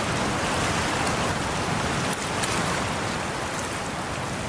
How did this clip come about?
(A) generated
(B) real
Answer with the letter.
B